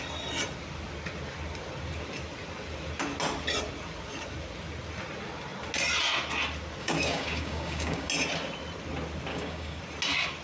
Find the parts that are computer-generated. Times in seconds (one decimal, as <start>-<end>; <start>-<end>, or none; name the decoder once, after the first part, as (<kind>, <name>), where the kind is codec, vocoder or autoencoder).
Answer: 6.8-8.1 (codec, DAC); 9.3-9.8